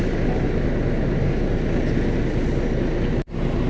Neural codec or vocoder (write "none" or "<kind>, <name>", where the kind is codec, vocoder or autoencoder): none